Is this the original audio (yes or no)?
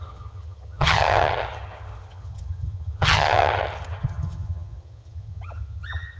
no